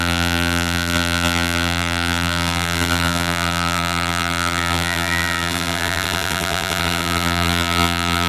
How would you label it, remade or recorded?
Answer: remade